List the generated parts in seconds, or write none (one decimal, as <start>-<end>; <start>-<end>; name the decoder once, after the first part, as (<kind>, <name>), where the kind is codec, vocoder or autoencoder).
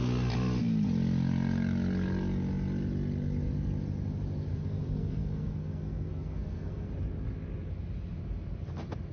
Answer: 4.5-6.9 (codec, SNAC)